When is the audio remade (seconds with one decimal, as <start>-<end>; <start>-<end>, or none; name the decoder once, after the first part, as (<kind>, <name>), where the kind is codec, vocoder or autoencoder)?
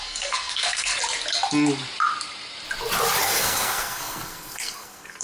0.0-0.9 (codec, SNAC); 3.2-5.2